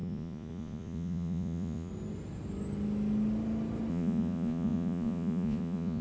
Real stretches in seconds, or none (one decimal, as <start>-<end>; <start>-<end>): 1.9-3.9